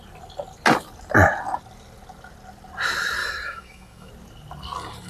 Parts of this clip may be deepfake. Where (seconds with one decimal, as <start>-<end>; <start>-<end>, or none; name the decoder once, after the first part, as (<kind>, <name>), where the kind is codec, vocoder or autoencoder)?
3.2-4.1 (autoencoder, DAC-VAE)